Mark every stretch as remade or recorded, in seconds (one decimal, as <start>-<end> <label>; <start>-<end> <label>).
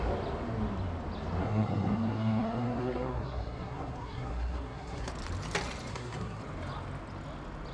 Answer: 0.0-1.4 recorded; 1.4-5.1 remade; 5.1-5.9 recorded; 5.9-6.4 remade; 6.4-7.7 recorded